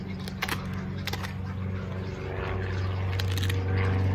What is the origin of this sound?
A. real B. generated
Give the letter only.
A